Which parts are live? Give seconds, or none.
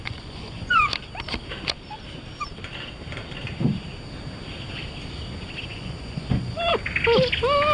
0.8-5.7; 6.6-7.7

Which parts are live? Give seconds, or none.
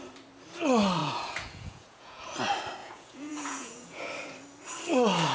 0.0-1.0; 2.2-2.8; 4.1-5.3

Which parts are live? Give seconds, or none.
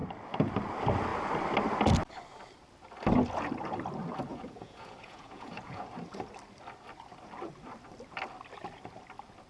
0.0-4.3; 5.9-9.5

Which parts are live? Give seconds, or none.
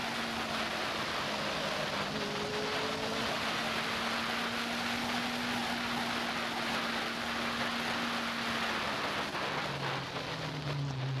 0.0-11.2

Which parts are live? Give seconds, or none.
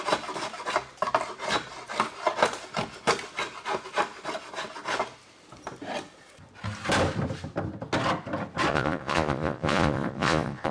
0.0-8.7